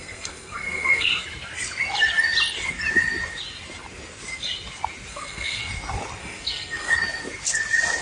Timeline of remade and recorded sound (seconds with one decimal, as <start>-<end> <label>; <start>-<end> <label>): 0.0-1.1 remade; 1.1-5.1 recorded; 5.1-5.6 remade; 5.6-6.2 recorded; 6.2-6.9 remade; 6.9-8.0 recorded